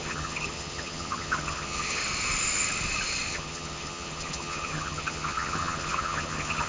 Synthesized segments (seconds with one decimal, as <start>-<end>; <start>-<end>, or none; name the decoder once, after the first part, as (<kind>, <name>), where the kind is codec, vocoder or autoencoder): 0.0-2.0 (vocoder, HiFi-GAN); 3.3-6.7